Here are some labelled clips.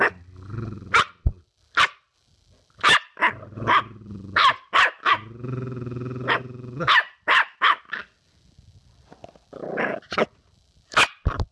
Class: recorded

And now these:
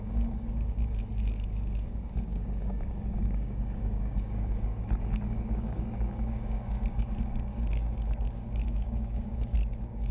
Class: remade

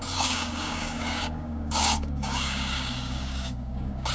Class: remade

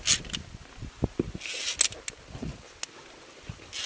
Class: recorded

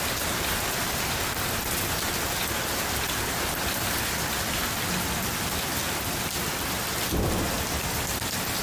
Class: recorded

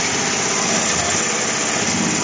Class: recorded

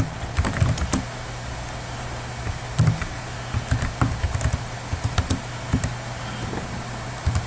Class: recorded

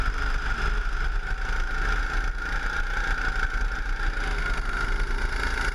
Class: recorded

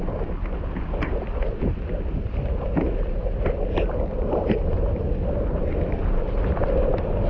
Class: recorded